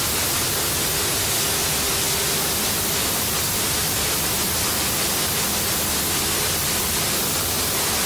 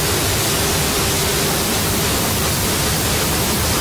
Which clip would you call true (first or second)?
first